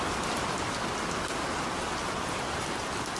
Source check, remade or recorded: recorded